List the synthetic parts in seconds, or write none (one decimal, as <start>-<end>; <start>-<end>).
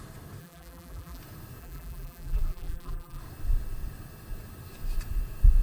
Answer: 0.4-1.2; 1.6-3.2